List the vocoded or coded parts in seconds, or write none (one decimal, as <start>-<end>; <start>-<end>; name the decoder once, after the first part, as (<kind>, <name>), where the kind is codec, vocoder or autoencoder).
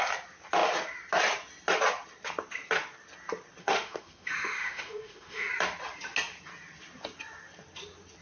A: 3.6-5.5 (autoencoder, DAC-VAE)